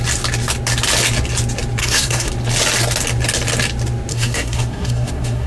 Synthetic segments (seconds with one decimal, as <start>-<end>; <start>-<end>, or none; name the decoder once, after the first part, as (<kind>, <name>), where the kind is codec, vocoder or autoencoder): 1.8-2.3 (codec, SNAC); 4.1-5.5